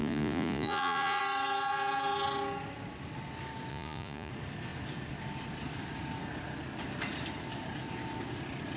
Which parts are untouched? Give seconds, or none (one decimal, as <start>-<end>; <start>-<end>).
1.2-3.7; 4.3-8.8